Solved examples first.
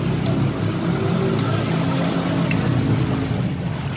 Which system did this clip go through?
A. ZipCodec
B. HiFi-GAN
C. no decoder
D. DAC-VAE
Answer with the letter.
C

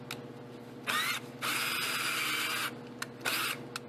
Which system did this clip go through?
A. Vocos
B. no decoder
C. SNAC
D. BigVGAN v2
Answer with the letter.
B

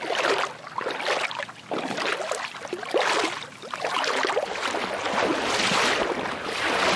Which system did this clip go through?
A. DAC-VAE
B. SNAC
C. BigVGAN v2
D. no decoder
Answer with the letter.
D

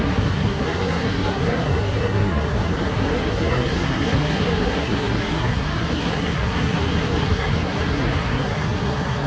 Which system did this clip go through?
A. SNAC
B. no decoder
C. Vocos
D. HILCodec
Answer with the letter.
A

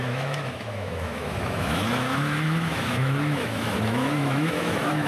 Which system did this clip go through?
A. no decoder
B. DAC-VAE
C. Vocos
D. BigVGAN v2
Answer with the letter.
B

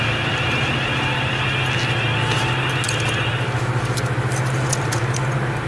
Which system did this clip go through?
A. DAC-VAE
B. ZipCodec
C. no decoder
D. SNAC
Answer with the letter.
C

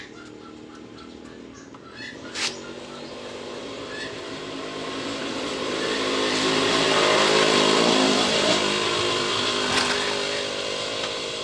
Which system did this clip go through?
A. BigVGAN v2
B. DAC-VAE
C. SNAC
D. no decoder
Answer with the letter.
D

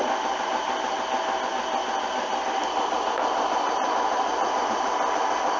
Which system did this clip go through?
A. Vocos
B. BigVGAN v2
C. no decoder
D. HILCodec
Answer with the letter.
C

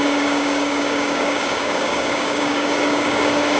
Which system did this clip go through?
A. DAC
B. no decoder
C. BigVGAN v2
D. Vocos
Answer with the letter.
A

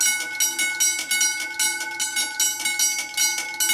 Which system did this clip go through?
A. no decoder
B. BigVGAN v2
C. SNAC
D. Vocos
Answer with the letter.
A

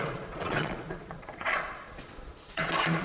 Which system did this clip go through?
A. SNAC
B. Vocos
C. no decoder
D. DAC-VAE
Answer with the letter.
B